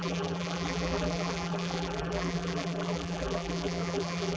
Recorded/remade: remade